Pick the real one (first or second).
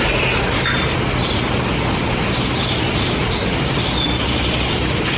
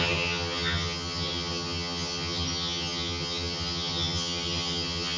first